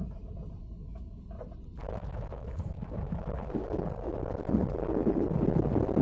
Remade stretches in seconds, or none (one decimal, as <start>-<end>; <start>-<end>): 0.6-1.2; 1.8-3.6